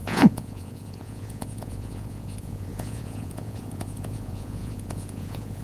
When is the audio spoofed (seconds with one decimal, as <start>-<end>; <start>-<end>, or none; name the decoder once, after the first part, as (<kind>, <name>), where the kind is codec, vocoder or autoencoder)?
0.0-5.6 (vocoder, Vocos)